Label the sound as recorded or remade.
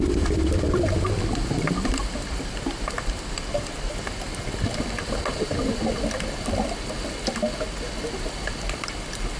remade